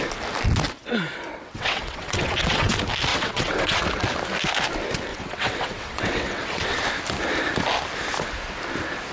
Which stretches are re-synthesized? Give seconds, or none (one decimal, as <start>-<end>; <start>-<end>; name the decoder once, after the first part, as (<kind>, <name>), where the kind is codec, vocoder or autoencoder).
0.8-2.7 (vocoder, WaveNeXt); 3.1-3.8; 5.1-6.8